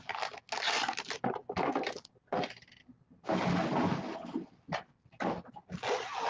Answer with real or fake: real